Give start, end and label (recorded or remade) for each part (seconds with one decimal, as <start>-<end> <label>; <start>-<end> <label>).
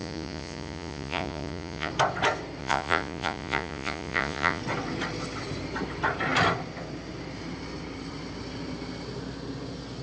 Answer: 0.0-1.9 remade; 1.9-2.6 recorded; 2.6-4.6 remade; 4.6-10.0 recorded